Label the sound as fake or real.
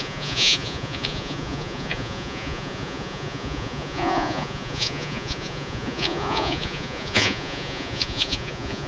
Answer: fake